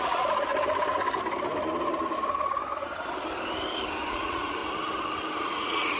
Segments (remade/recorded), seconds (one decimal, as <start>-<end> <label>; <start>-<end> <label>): 0.0-0.5 remade; 0.5-4.1 recorded; 4.1-4.6 remade; 4.6-5.4 recorded; 5.4-6.0 remade